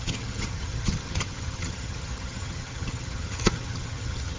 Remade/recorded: remade